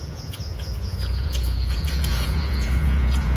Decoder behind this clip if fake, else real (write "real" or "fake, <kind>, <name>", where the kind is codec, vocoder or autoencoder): fake, vocoder, Vocos